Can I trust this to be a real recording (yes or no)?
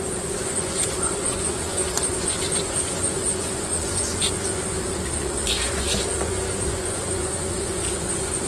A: no